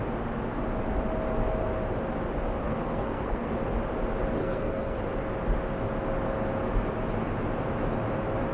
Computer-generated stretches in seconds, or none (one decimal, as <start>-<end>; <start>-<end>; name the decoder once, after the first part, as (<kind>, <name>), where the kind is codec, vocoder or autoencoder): 2.6-3.5 (codec, SNAC); 4.4-5.0